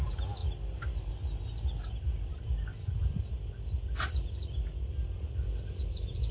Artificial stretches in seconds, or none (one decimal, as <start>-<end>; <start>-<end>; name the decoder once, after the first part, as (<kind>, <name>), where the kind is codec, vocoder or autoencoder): none